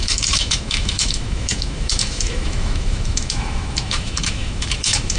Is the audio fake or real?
fake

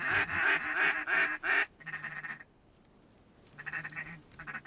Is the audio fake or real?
real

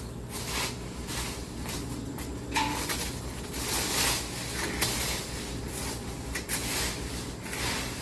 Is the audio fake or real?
real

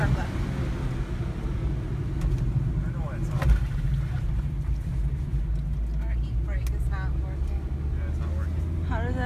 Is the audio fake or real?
real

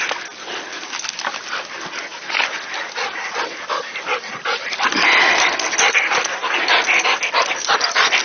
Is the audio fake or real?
real